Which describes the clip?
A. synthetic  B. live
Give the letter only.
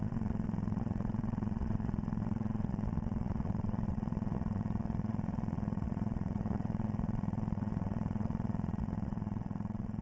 A